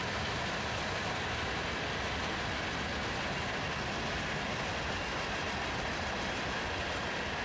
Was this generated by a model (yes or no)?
no